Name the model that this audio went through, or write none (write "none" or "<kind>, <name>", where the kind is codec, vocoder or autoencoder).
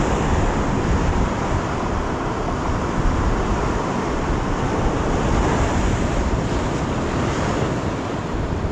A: none